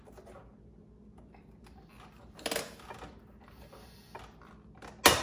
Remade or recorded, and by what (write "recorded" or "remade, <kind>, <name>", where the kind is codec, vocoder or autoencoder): recorded